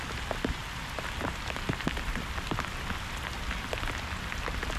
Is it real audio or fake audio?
real